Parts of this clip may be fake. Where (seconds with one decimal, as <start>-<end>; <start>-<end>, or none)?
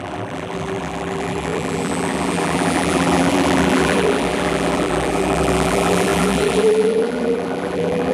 0.0-8.1